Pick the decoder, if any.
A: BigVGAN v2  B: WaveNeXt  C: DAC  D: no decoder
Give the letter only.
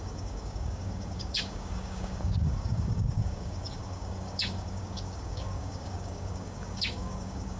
C